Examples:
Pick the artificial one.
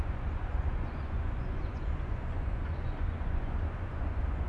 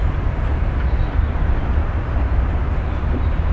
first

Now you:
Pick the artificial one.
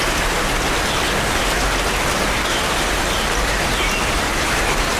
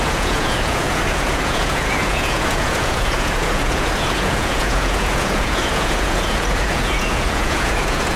second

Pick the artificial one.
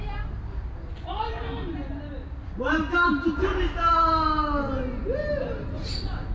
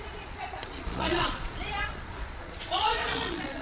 second